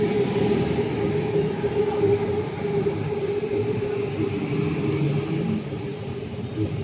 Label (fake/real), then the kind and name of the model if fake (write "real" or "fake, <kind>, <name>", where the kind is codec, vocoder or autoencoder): real